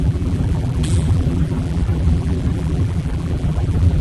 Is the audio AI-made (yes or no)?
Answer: yes